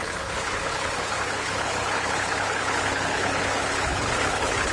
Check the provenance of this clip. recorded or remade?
remade